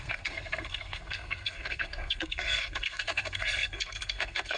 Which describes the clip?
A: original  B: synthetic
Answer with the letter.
B